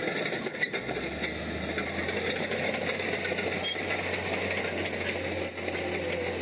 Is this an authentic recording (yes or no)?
yes